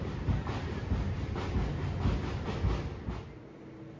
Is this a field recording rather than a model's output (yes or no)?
yes